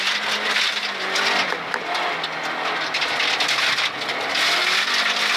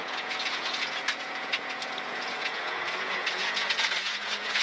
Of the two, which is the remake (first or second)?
second